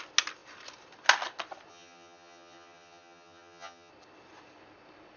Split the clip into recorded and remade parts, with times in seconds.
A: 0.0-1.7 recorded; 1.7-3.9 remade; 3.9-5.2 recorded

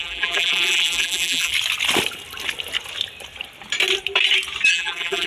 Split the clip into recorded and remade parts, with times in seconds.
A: 0.0-1.5 remade; 1.5-4.7 recorded; 4.7-5.3 remade

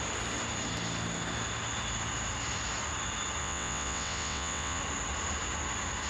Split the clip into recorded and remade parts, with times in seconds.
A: 0.0-3.4 recorded; 3.4-4.8 remade; 4.8-6.1 recorded